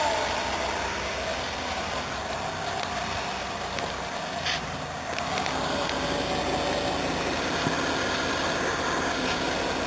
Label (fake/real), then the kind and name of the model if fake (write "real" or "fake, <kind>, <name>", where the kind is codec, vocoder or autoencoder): real